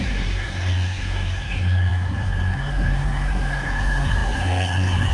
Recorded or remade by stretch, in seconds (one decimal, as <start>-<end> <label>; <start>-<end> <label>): 0.0-5.1 remade